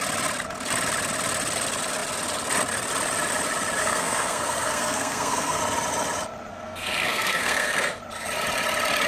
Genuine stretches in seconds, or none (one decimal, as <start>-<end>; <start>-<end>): 0.0-3.8; 5.6-6.5; 8.0-9.1